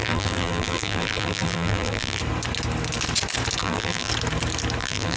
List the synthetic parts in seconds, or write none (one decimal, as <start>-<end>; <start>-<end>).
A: 0.0-2.2; 3.6-4.1; 4.8-5.2